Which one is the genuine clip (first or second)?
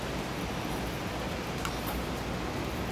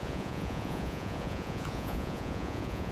first